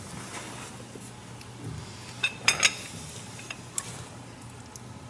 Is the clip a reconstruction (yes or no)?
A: no